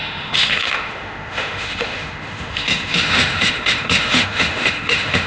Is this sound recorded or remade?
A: remade